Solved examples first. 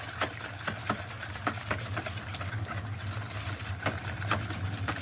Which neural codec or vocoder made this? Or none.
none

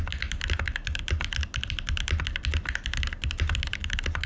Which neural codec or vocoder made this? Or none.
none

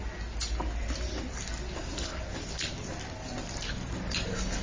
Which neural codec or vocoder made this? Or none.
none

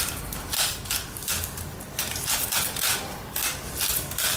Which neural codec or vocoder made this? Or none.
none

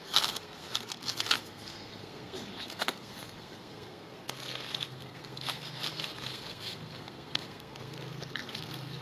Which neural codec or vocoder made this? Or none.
codec, SNAC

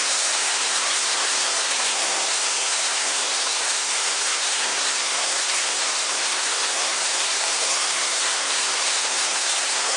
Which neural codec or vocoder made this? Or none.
codec, SNAC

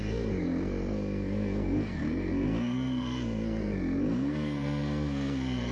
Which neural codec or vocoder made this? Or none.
codec, SNAC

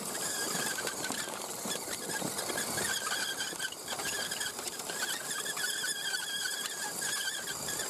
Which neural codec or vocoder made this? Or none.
vocoder, BigVGAN v2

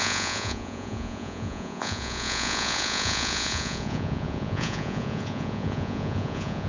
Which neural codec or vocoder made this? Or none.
vocoder, Vocos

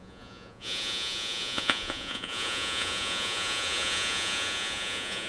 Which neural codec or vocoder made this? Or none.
vocoder, Vocos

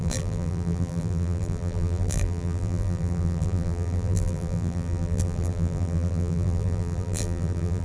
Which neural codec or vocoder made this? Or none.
vocoder, BigVGAN v2